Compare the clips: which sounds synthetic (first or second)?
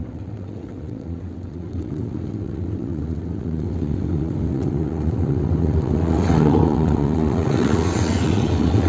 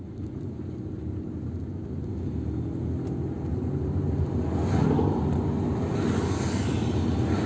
first